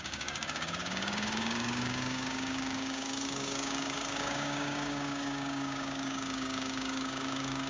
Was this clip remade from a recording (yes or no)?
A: yes